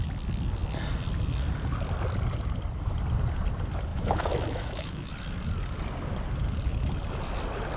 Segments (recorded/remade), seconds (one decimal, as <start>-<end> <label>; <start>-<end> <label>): 0.0-3.9 recorded; 3.9-5.1 remade; 5.1-7.8 recorded